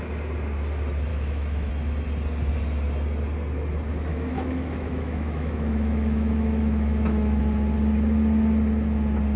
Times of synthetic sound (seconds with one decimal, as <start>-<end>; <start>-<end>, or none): 1.1-1.7; 4.1-7.4